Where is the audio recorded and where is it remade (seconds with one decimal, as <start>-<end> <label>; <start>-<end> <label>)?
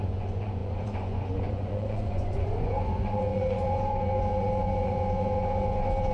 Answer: 0.0-6.1 remade